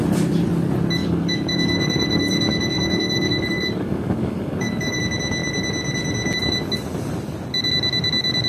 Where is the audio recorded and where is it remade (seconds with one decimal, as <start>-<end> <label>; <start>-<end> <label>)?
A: 0.0-1.0 recorded; 1.0-5.0 remade; 5.0-8.5 recorded